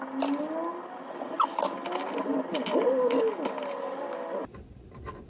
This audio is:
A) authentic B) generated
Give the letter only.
A